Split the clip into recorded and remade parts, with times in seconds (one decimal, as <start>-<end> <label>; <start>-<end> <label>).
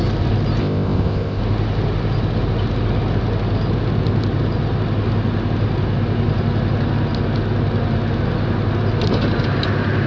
0.0-0.6 recorded; 0.6-1.4 remade; 1.4-10.1 recorded